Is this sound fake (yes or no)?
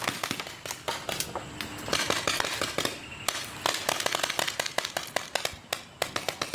no